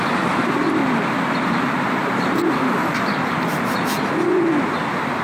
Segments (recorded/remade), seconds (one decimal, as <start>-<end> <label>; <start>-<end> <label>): 0.0-0.8 remade; 0.8-1.4 recorded; 1.4-2.9 remade; 2.9-4.5 recorded; 4.5-5.2 remade